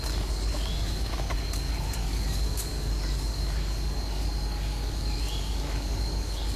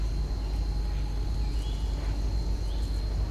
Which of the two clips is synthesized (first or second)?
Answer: first